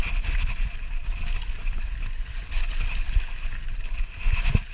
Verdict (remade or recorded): recorded